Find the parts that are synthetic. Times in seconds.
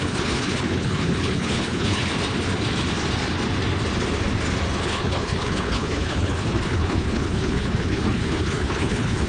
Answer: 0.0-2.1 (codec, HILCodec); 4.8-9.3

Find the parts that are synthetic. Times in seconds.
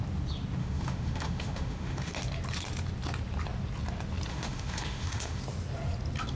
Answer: 0.6-2.1 (autoencoder, DAC-VAE); 4.3-5.4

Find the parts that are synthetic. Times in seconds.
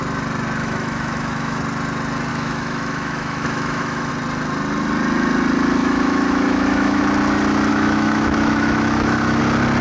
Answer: 0.6-1.6 (autoencoder, DAC-VAE); 2.3-4.1; 5.8-7.0; 7.7-9.4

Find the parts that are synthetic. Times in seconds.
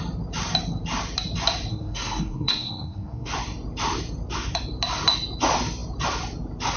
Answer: 1.7-3.3 (codec, SNAC)